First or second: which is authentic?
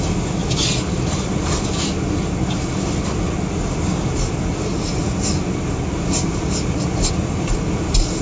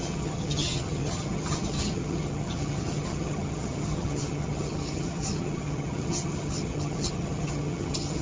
first